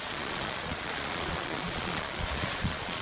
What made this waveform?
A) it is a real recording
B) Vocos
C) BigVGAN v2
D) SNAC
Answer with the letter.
B